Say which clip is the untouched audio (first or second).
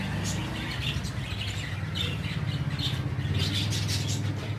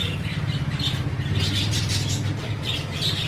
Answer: first